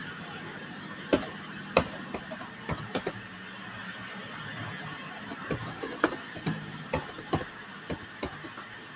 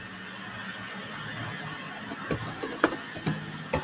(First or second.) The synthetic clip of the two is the first